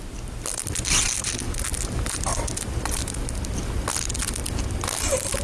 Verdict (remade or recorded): recorded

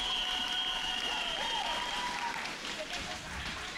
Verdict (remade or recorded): remade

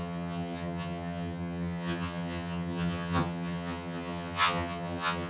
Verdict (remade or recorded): remade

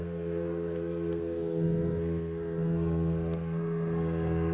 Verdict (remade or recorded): remade